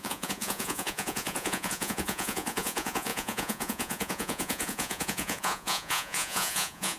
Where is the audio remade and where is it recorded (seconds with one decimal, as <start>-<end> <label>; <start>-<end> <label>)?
0.0-7.0 remade